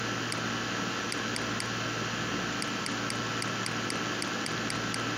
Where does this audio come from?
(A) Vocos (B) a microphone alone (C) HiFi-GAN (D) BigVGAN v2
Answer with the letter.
B